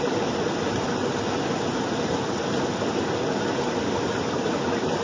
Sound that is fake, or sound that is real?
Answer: real